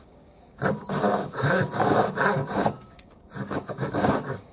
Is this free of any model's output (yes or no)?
no